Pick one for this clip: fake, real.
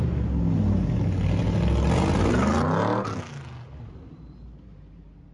real